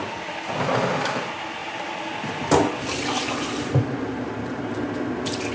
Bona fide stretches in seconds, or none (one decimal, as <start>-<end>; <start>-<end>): 0.0-5.5